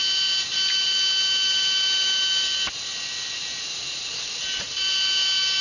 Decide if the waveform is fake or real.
real